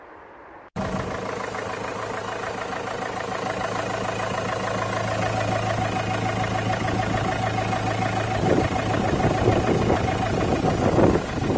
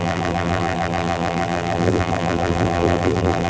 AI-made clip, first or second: second